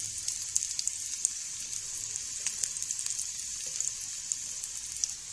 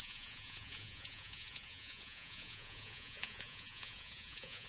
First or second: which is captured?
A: first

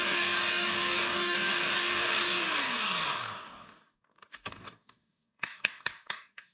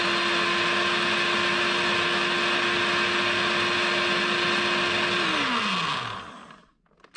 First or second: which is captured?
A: second